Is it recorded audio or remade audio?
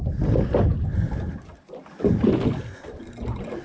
recorded